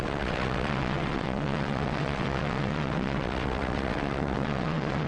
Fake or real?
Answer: fake